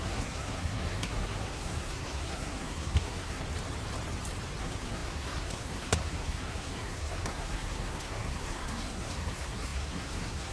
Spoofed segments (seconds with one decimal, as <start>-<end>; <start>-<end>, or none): 0.0-3.4; 4.6-10.5